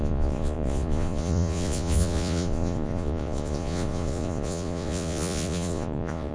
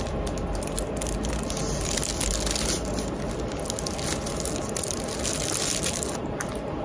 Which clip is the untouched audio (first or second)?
second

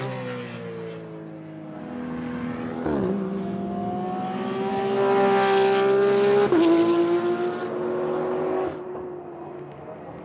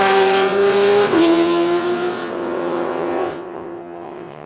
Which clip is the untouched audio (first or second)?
first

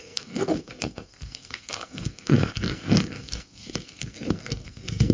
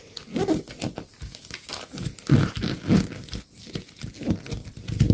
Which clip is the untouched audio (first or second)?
second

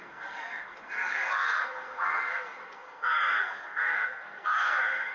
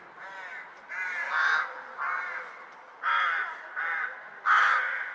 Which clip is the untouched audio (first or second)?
second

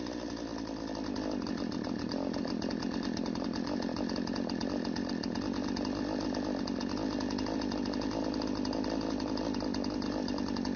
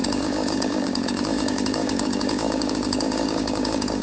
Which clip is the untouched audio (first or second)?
first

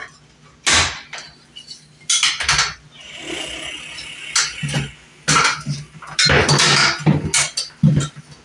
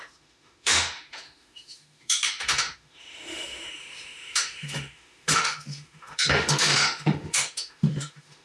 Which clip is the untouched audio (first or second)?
first